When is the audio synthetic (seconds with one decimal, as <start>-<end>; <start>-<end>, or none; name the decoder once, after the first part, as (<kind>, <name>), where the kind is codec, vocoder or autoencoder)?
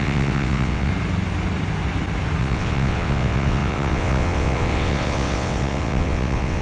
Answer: 0.0-0.9 (vocoder, WaveNeXt); 2.4-6.6